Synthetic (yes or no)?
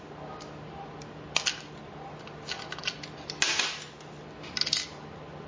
no